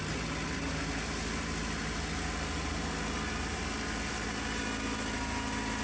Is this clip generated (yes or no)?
no